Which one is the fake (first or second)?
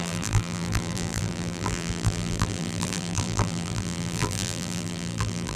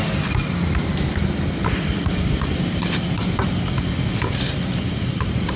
first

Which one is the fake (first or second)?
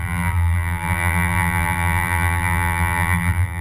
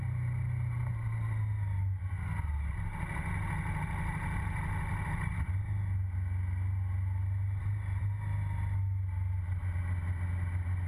first